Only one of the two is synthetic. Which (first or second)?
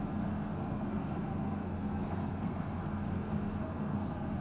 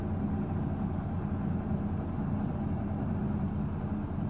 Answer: first